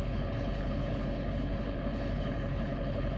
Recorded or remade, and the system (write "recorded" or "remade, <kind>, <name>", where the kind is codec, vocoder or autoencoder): remade, codec, HILCodec